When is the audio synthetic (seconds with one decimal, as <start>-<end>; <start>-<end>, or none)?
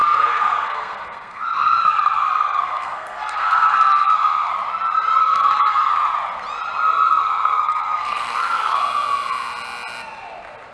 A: 0.0-4.5; 5.2-5.9; 7.2-8.8